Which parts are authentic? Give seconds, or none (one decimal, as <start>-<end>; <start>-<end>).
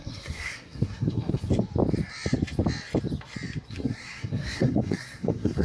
1.5-3.7